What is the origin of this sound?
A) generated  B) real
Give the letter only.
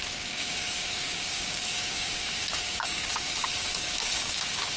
A